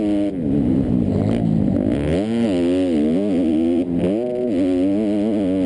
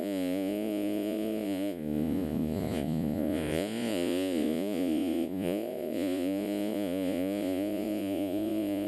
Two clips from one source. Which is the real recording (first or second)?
first